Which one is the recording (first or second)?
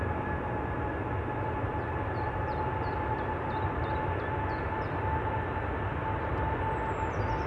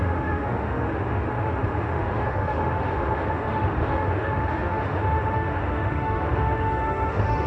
first